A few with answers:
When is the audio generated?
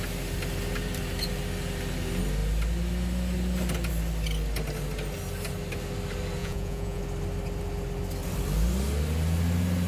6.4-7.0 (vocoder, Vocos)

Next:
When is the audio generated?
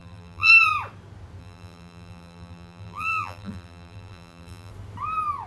0.0-0.5 (vocoder, BigVGAN v2); 1.4-4.7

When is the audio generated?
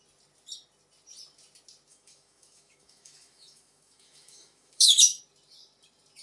1.9-5.2 (autoencoder, DAC-VAE)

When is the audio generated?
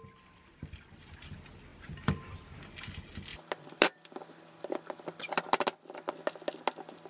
3.3-5.4 (vocoder, BigVGAN v2)